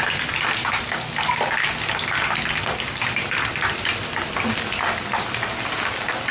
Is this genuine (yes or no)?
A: yes